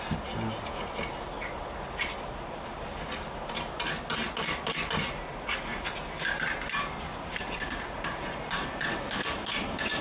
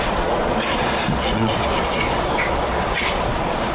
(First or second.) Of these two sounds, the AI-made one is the second